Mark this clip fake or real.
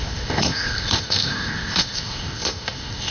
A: fake